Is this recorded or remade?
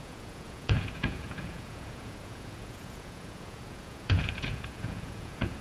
remade